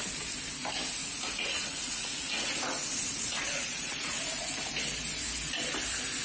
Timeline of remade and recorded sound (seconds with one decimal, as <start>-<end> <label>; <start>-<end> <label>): 0.0-1.0 recorded; 1.0-4.7 remade; 4.7-6.2 recorded